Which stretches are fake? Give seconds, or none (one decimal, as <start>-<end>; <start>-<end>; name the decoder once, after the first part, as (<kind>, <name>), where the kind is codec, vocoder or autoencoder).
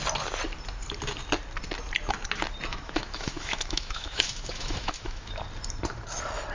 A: 2.7-5.3 (autoencoder, DAC-VAE)